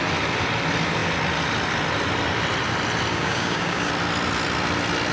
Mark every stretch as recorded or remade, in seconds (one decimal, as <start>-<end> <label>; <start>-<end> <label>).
0.0-3.1 recorded; 3.1-3.9 remade; 3.9-5.1 recorded